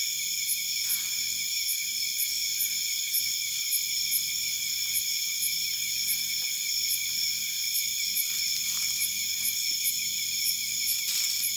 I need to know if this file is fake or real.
fake